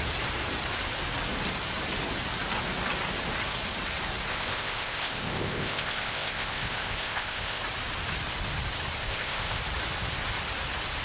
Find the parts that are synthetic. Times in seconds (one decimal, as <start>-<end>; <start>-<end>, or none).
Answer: 4.3-7.6; 9.0-9.6